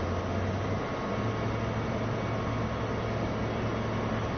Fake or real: real